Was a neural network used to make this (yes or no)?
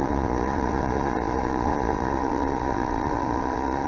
yes